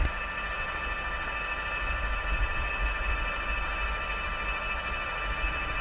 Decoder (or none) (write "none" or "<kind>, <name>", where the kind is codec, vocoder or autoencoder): none